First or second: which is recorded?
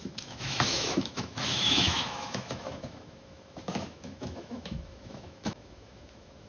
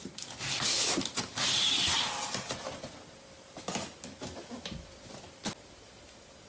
second